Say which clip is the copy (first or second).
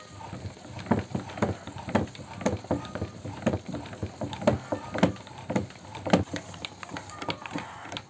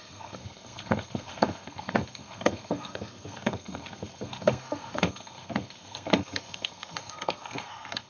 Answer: second